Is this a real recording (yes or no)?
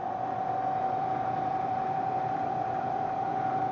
no